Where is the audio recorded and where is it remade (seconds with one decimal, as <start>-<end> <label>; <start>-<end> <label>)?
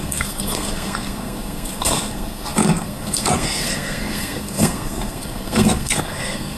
0.0-6.6 remade